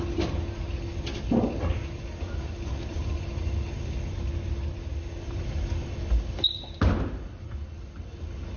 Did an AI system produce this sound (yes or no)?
no